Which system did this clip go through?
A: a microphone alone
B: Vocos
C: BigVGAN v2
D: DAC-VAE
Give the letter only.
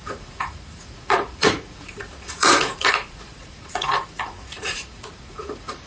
B